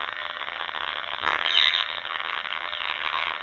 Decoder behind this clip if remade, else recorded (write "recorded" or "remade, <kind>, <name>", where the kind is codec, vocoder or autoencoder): remade, vocoder, HiFi-GAN